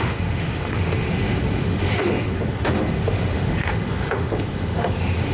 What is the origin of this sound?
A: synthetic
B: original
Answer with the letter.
A